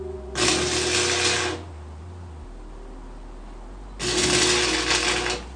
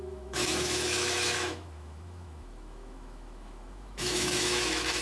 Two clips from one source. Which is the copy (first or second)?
second